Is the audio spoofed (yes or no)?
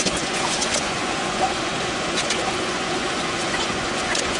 yes